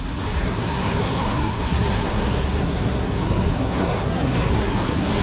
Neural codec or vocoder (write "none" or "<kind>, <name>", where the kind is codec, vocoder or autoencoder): codec, SNAC